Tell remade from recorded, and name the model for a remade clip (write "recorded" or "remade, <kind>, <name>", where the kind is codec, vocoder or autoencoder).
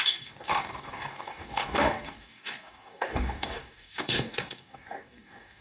remade, codec, DAC